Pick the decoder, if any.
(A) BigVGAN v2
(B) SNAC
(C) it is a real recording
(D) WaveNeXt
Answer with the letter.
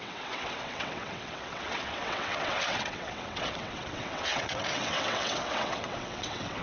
D